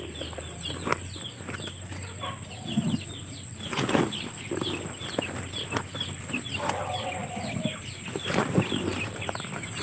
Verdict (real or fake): real